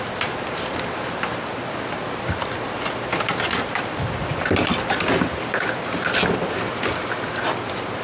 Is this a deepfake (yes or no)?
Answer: no